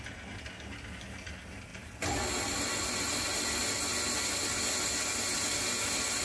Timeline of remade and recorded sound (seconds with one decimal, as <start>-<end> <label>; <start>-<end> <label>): 0.0-6.2 recorded